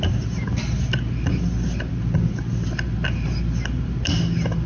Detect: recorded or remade recorded